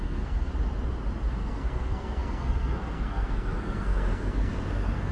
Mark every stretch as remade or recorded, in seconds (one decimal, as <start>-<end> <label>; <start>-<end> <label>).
0.0-0.5 remade; 0.5-1.3 recorded; 1.3-5.1 remade